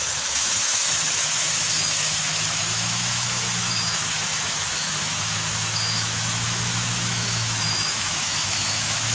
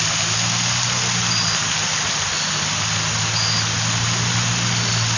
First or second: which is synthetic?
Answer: first